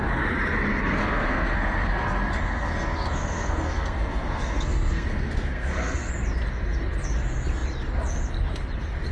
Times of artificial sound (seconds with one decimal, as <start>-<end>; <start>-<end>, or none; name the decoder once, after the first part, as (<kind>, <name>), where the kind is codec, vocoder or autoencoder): 1.0-6.1 (codec, SNAC)